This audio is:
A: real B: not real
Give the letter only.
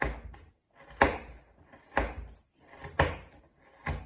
A